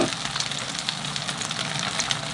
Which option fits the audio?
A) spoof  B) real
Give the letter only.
B